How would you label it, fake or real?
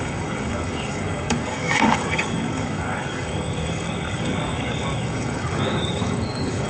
fake